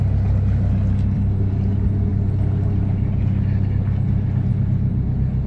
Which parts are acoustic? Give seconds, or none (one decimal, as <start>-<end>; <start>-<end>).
0.0-5.5